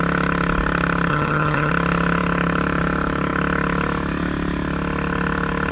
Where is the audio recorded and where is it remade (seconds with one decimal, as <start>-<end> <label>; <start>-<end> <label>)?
0.0-1.1 recorded; 1.1-1.7 remade; 1.7-5.7 recorded